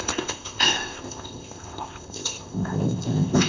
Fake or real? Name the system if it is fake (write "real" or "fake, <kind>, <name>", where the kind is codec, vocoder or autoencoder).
fake, codec, ZipCodec